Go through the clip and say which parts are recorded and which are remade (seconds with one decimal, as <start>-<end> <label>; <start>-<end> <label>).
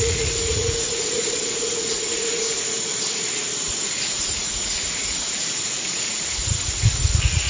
0.0-2.9 remade; 2.9-3.8 recorded; 3.8-7.5 remade